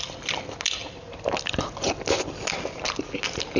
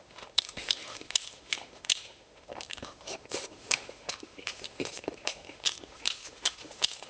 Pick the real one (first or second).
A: first